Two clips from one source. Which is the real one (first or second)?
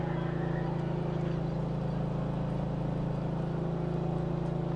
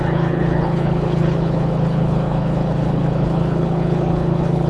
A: first